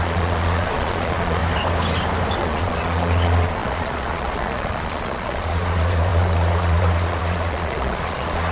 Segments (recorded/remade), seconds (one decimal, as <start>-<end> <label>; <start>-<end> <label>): 0.0-1.4 remade; 1.4-2.4 recorded; 2.4-8.5 remade